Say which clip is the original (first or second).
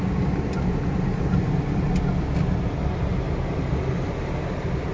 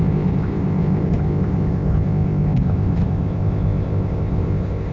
first